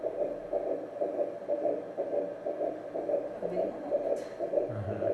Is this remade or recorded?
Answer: recorded